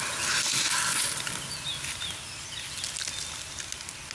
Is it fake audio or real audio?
real